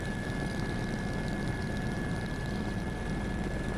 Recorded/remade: remade